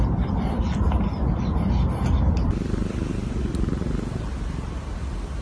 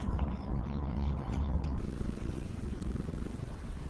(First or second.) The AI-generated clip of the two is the second